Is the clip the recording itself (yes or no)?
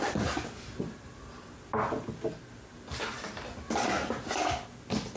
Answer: yes